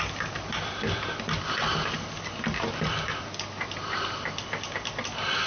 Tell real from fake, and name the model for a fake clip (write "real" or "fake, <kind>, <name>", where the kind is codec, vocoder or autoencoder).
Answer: real